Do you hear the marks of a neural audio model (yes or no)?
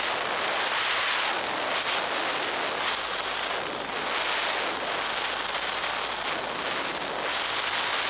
no